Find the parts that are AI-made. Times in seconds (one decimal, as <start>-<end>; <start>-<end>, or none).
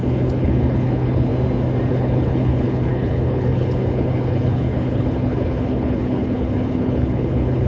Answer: 0.0-1.3; 1.9-7.7